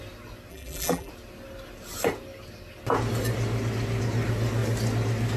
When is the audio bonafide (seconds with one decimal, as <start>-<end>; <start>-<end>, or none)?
0.0-0.5; 1.1-5.4